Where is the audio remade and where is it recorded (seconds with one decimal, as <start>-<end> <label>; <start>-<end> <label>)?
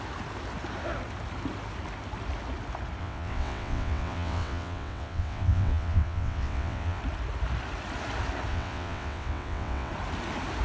0.0-3.0 recorded; 3.0-7.0 remade; 7.0-8.5 recorded; 8.5-9.9 remade; 9.9-10.6 recorded